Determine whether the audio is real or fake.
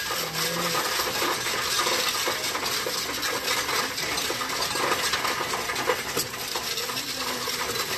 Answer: real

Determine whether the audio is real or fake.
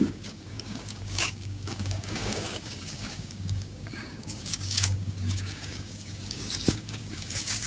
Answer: fake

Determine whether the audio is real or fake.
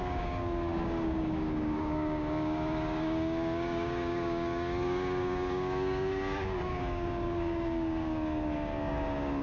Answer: fake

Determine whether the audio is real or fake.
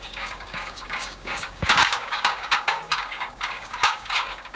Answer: fake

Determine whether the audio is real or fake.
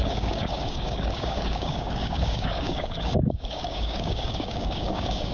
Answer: fake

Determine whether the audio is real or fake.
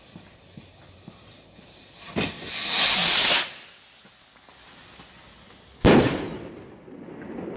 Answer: real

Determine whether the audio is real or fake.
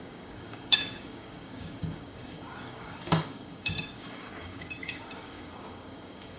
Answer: fake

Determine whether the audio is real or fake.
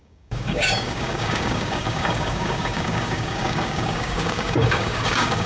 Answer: fake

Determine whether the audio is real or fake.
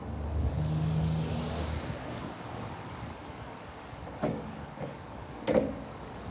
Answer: fake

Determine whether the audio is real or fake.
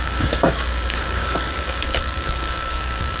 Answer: fake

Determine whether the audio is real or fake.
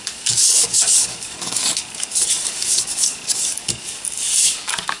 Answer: fake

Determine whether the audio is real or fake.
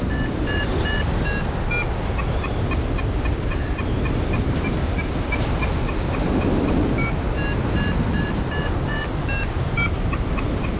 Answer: real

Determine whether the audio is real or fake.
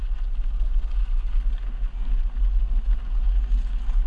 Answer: real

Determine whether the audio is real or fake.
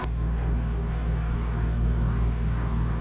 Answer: fake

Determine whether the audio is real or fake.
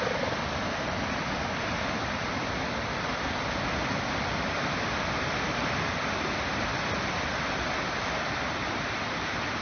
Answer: real